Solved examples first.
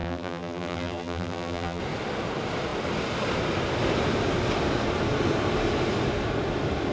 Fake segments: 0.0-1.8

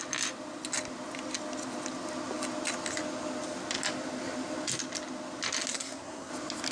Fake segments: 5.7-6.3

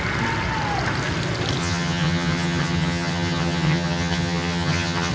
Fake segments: 1.6-5.1